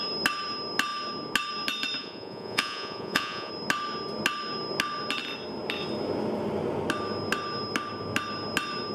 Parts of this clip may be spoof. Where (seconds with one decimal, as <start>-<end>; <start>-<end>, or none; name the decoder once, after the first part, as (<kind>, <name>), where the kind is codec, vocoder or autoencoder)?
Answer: 2.0-3.5 (vocoder, Vocos)